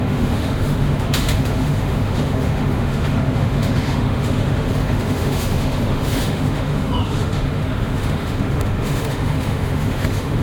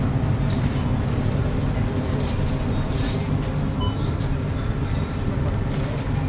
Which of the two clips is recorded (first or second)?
second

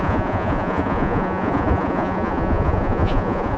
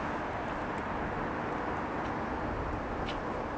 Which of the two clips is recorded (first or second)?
second